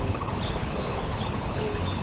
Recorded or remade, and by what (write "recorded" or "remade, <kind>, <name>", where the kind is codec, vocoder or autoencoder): remade, codec, HILCodec